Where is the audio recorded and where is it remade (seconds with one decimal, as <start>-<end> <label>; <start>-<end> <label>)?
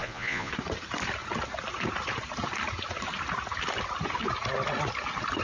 0.0-0.5 remade; 0.5-5.4 recorded